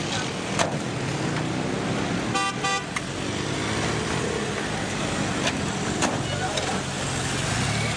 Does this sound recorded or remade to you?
recorded